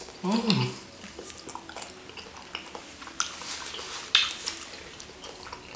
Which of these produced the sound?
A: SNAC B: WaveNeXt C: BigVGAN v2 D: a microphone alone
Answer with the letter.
D